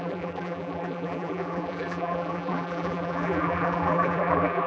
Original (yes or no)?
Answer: no